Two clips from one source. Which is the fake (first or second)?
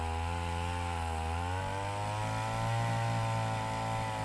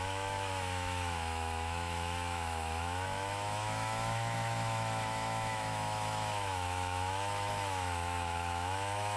second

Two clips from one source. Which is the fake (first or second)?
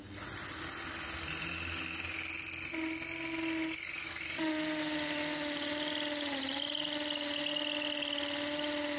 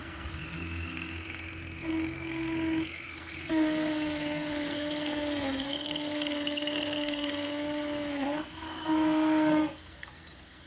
second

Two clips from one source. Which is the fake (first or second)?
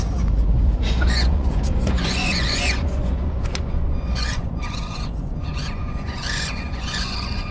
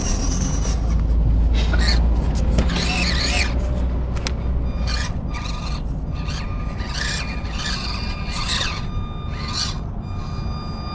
first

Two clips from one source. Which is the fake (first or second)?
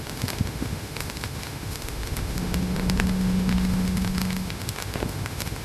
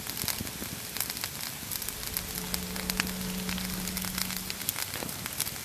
first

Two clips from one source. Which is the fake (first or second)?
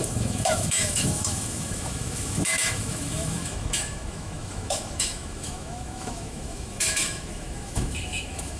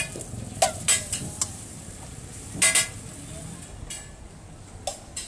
first